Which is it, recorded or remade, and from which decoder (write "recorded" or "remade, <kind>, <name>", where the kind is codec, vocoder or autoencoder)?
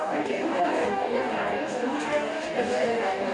remade, codec, DAC